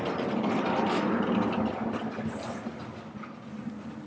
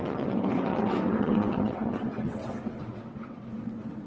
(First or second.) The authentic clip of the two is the first